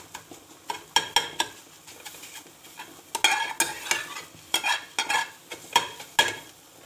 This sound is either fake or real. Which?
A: real